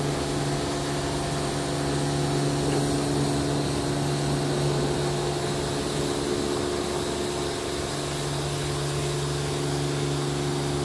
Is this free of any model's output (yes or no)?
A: yes